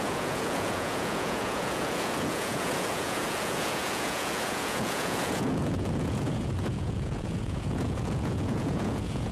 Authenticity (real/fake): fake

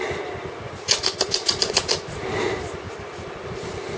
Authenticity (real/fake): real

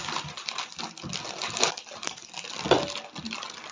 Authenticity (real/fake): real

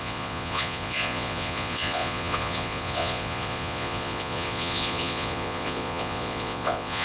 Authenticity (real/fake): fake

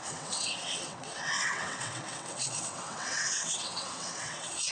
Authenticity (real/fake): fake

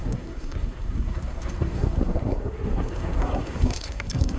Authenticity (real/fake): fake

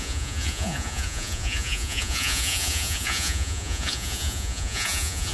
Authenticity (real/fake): fake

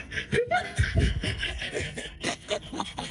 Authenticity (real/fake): fake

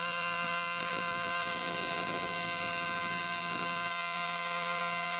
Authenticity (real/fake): fake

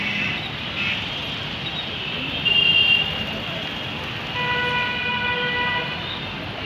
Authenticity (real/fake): real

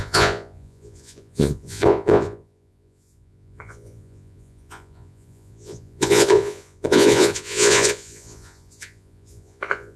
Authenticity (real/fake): fake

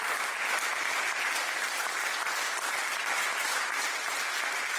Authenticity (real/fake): real